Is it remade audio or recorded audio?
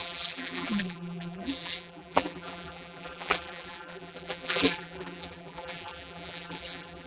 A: remade